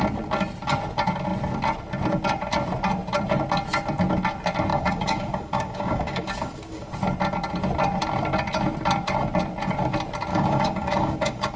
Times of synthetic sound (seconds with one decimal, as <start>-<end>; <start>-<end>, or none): 4.7-6.9; 10.3-11.6